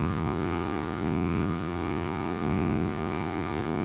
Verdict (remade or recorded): remade